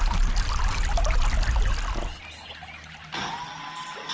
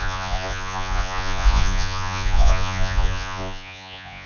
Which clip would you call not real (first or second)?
second